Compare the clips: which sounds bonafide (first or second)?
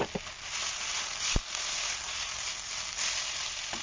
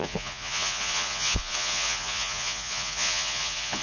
first